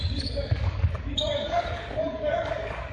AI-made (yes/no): yes